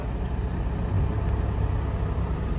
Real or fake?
real